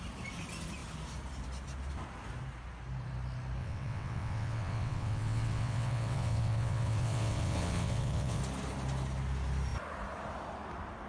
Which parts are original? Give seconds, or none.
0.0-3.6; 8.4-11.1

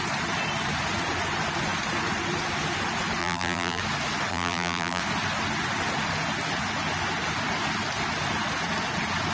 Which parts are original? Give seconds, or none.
0.0-3.2; 3.8-4.3; 5.0-9.3

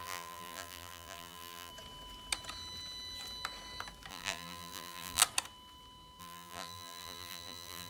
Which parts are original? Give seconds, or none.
1.7-4.1; 5.2-6.2

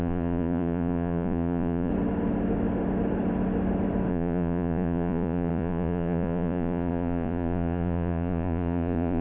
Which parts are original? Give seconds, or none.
1.9-4.1